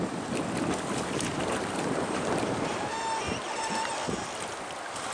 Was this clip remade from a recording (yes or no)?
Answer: no